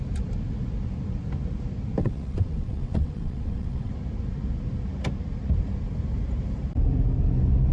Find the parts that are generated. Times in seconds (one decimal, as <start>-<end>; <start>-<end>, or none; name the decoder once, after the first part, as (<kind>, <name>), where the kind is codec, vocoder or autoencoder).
2.0-3.9 (vocoder, WaveNeXt)

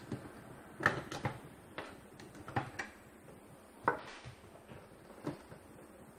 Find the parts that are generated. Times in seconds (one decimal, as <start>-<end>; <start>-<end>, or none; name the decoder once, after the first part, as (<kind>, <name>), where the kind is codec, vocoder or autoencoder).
none

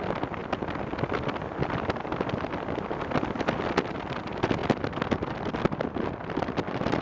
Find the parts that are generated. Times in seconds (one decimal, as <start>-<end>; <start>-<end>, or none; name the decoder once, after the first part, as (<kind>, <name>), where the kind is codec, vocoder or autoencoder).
none

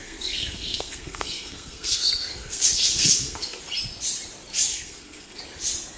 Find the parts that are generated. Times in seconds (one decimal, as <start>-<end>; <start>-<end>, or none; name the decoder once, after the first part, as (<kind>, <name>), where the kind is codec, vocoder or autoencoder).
0.0-3.6 (codec, SNAC); 4.7-5.4

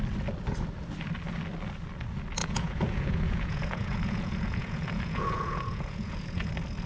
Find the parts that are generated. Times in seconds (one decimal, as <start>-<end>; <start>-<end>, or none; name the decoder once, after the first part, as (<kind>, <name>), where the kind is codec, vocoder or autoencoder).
2.4-6.5 (vocoder, Vocos)

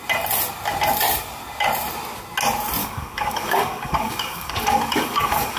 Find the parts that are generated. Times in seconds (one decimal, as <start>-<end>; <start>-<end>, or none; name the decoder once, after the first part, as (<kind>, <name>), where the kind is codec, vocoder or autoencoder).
2.8-5.6 (codec, DAC)

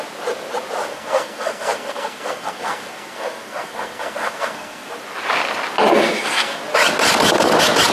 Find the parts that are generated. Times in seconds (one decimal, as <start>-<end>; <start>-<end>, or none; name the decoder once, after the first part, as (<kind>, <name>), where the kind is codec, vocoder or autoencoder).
0.9-4.9 (codec, SNAC); 5.9-6.6